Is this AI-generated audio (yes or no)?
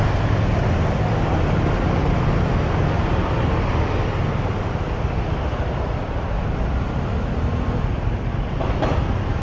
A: no